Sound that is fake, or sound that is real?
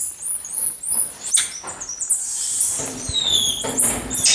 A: real